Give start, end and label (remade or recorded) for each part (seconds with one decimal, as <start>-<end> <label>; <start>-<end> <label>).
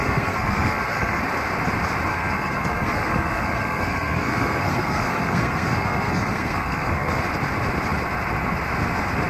0.0-1.2 remade; 1.2-2.1 recorded; 2.1-7.2 remade; 7.2-9.3 recorded